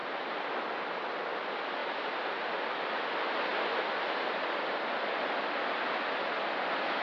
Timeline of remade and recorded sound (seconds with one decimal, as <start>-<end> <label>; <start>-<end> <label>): 0.0-7.0 recorded